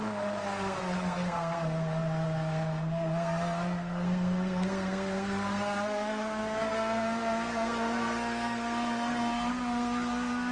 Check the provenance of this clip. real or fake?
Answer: fake